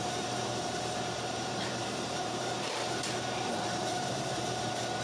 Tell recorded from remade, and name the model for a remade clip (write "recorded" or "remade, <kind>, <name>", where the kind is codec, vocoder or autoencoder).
remade, vocoder, BigVGAN v2